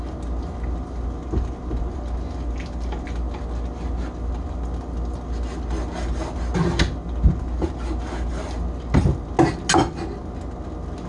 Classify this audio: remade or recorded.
recorded